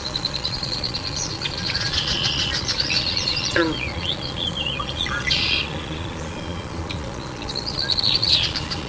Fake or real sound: fake